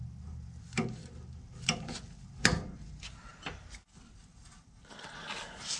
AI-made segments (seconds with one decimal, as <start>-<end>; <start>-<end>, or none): none